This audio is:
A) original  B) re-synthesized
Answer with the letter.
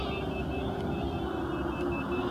A